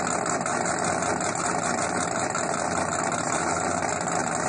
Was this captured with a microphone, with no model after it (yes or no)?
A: yes